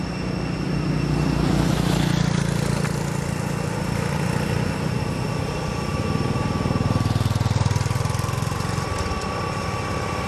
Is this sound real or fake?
real